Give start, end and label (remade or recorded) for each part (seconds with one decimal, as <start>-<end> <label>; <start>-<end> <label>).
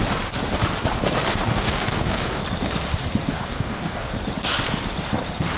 0.0-1.3 recorded; 1.3-2.4 remade; 2.4-3.4 recorded; 3.4-4.1 remade; 4.1-5.6 recorded